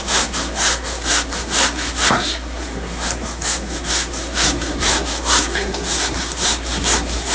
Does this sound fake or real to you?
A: fake